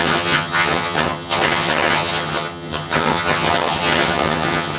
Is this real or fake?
fake